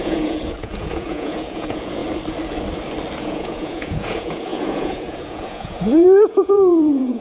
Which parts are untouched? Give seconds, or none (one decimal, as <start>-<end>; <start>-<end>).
2.0-3.2